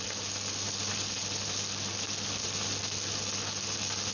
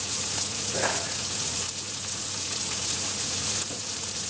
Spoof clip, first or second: second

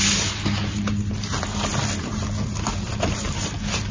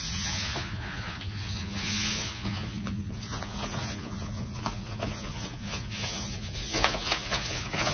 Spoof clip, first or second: second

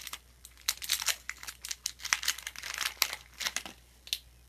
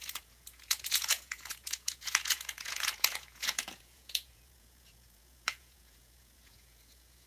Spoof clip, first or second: second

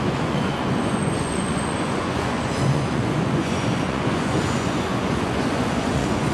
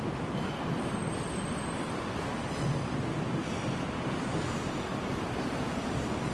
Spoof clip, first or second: first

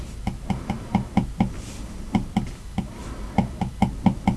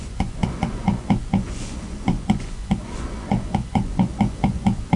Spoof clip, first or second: second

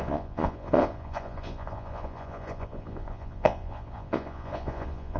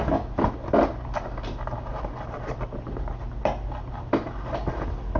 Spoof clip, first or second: first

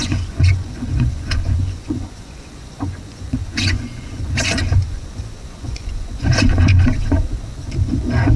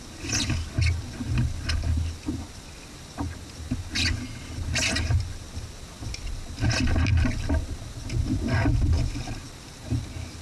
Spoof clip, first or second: first